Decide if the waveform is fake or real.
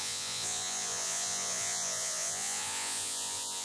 fake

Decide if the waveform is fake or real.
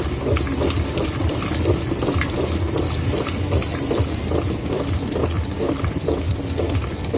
real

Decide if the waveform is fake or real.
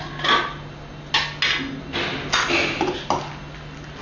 real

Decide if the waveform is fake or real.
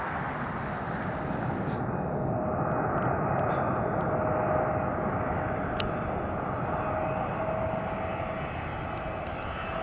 real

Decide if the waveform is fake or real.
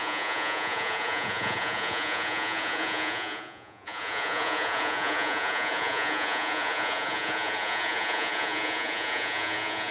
fake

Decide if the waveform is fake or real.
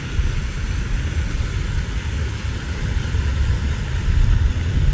real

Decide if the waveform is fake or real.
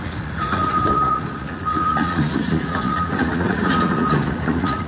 fake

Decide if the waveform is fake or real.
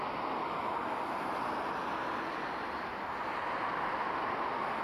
real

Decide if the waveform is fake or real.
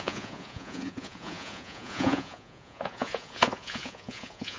fake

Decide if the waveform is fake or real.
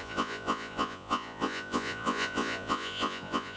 fake